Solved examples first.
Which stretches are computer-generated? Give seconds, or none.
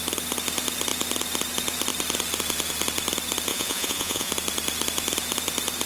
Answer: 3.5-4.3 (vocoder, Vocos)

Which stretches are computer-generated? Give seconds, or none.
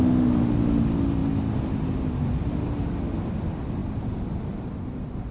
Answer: none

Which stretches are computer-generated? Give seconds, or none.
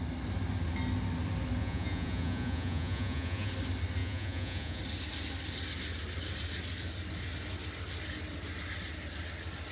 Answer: 1.6-3.5 (vocoder, Vocos); 4.0-4.8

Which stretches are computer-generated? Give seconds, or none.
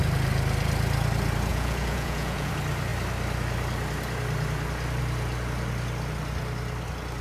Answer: 1.5-2.5 (vocoder, Vocos)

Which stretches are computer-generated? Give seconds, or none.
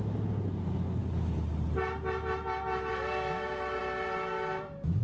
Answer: none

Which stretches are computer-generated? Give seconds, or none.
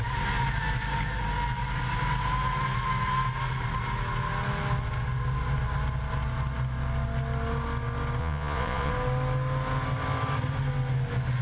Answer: 8.2-8.9 (vocoder, Vocos)